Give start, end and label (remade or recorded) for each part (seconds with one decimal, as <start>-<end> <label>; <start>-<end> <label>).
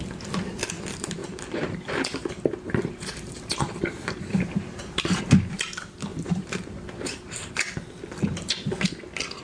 0.0-1.2 recorded; 1.2-5.2 remade; 5.2-6.1 recorded; 6.1-7.5 remade; 7.5-9.4 recorded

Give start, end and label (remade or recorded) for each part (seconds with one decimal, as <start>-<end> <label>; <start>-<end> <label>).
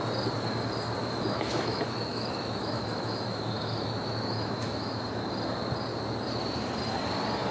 0.0-1.0 recorded; 1.0-4.9 remade; 4.9-7.5 recorded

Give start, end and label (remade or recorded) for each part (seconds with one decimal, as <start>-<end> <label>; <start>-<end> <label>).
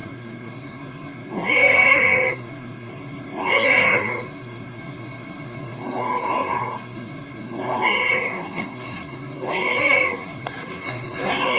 0.0-11.6 remade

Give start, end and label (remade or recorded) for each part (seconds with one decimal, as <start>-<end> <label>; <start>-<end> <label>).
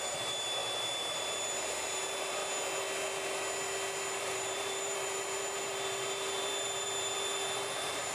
0.0-2.4 remade; 2.4-4.2 recorded; 4.2-8.1 remade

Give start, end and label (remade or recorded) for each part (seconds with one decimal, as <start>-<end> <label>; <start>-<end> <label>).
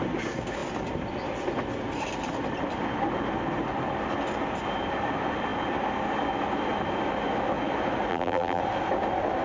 0.0-8.1 recorded; 8.1-8.6 remade; 8.6-9.4 recorded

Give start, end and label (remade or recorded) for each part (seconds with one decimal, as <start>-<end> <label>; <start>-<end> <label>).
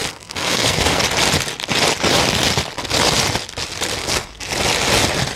0.0-1.0 remade; 1.0-4.0 recorded; 4.0-4.5 remade; 4.5-5.4 recorded